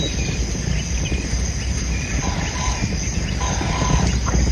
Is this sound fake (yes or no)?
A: no